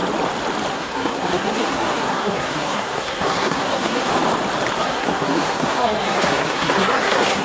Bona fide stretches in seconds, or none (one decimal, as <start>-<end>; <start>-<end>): 0.0-0.7; 4.1-4.8